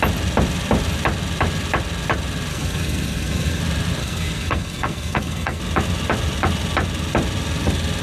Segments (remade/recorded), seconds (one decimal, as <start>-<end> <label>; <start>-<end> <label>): 0.0-2.5 recorded; 2.5-3.6 remade; 3.6-4.0 recorded; 4.0-5.6 remade; 5.6-8.0 recorded